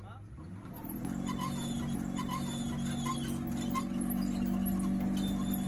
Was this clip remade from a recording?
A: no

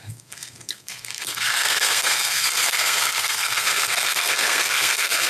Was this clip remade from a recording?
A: yes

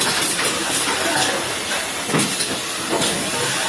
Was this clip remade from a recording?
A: no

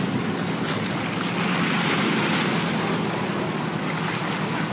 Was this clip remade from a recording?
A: no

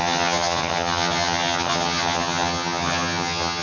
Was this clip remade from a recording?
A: yes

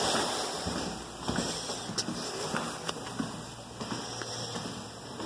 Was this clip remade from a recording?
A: no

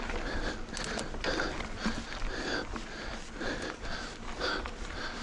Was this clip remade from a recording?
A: no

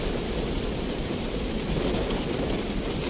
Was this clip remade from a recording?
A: yes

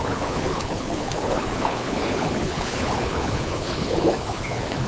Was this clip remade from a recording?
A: yes